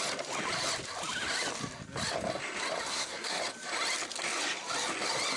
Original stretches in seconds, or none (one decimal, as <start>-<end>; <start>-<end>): 0.0-2.9; 3.4-5.4